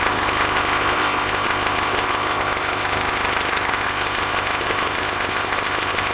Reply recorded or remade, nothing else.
remade